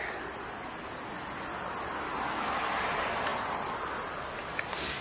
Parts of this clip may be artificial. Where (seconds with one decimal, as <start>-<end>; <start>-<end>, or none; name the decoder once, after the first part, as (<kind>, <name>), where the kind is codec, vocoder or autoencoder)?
none

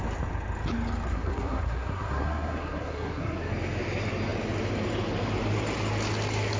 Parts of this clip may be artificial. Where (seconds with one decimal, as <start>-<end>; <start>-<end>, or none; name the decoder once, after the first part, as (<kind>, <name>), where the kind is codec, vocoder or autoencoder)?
1.1-3.5 (codec, SNAC)

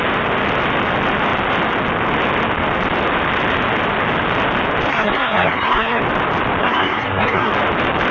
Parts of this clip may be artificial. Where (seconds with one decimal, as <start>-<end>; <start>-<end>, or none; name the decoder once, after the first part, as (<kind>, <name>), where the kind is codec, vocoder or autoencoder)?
4.9-6.0 (codec, SNAC); 6.6-7.5

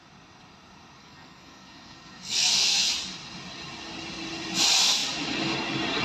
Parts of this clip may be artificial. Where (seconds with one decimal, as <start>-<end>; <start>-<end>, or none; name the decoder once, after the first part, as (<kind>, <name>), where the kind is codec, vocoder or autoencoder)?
1.0-2.9 (codec, SNAC)

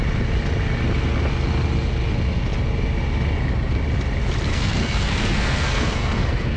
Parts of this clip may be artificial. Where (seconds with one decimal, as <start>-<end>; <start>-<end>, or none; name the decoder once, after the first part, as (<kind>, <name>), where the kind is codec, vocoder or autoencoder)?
4.5-6.6 (codec, SNAC)

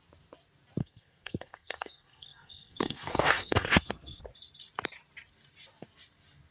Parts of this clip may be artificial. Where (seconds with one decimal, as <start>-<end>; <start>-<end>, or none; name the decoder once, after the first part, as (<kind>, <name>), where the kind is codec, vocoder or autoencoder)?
0.8-4.2 (codec, SNAC)